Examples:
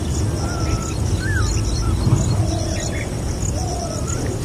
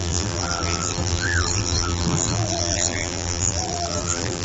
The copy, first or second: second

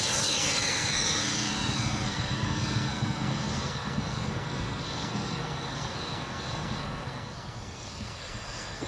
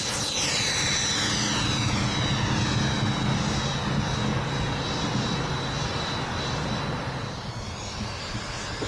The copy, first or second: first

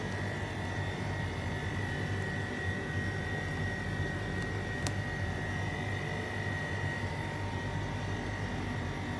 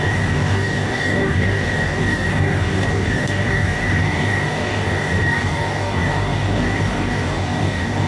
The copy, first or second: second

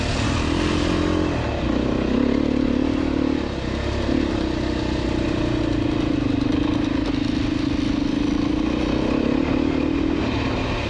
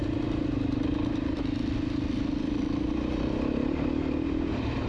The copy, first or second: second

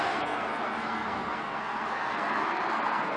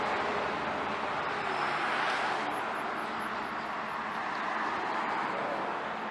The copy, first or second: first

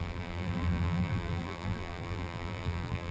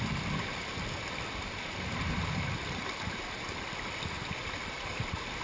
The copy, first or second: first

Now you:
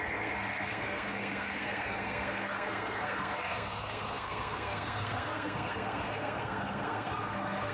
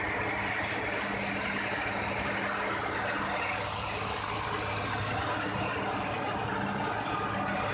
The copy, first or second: first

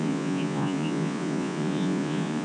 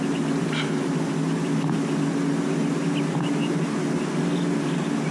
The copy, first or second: first